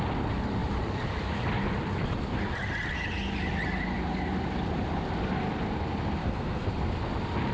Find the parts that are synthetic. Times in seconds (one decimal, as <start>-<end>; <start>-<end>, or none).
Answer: 6.2-6.7